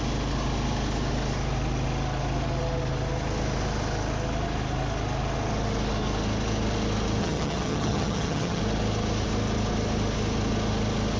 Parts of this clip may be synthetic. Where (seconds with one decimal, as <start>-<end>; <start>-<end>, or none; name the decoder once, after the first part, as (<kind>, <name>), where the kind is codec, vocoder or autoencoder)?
7.2-8.6 (vocoder, HiFi-GAN)

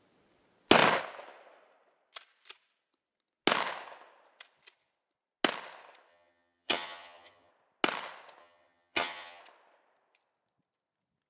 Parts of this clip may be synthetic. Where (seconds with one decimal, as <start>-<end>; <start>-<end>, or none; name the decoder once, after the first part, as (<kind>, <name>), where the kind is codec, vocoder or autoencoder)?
6.1-7.5 (vocoder, HiFi-GAN); 8.4-9.4

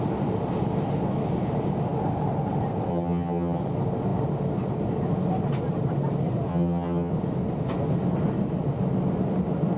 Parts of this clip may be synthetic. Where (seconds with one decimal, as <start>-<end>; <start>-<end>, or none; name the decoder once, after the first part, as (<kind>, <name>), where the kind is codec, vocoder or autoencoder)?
2.9-3.6 (vocoder, HiFi-GAN); 6.5-7.1

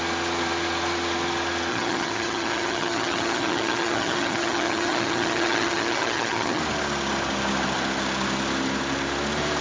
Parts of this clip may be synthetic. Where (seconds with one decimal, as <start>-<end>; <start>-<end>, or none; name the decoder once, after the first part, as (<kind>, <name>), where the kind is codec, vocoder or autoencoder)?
1.7-6.6 (vocoder, HiFi-GAN)

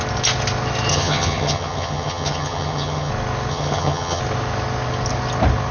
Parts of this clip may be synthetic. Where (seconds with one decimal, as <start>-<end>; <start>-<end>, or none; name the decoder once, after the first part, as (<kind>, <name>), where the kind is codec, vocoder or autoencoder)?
0.9-3.1 (vocoder, HiFi-GAN); 3.5-4.2

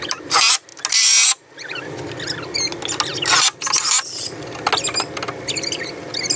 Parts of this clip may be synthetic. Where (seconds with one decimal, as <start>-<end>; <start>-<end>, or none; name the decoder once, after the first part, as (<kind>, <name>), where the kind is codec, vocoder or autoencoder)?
none

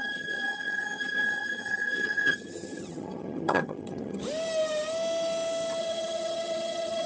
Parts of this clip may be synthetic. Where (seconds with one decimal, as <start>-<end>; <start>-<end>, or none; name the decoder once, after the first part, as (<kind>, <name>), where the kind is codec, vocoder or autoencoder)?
0.0-4.2 (vocoder, HiFi-GAN); 5.8-7.1

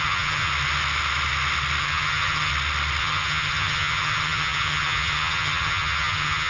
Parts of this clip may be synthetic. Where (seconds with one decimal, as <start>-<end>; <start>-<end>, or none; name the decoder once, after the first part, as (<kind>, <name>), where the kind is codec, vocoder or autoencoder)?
0.0-0.5 (vocoder, HiFi-GAN); 1.8-2.5; 3.0-6.5